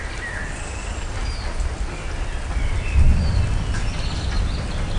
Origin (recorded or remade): recorded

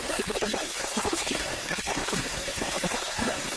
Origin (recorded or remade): remade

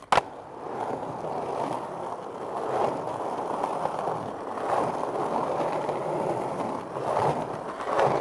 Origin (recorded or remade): recorded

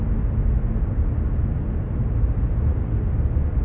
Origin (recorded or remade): recorded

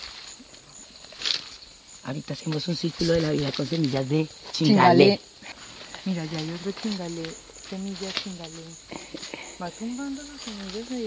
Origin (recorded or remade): recorded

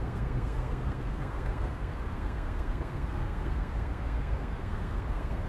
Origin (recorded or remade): remade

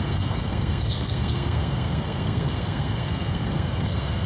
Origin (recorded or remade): remade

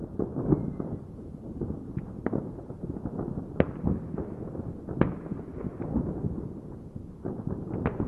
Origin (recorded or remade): recorded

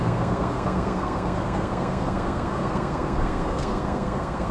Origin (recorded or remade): remade